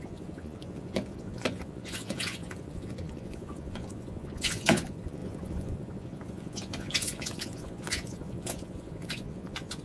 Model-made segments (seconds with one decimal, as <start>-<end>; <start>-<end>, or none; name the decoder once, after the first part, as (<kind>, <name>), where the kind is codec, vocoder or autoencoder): 0.0-9.8 (vocoder, Vocos)